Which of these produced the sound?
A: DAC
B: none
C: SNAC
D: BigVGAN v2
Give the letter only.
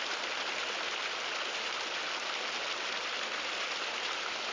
B